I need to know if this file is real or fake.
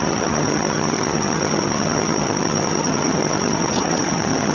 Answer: fake